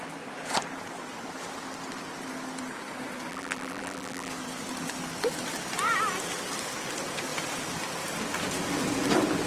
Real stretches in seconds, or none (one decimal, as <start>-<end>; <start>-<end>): 0.0-3.3; 4.3-9.5